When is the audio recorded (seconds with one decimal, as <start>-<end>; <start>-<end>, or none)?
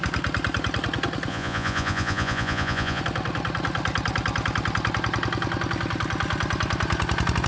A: 0.0-1.3; 3.0-7.5